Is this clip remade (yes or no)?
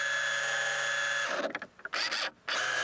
no